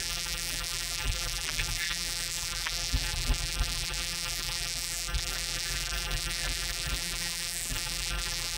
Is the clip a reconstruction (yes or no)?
yes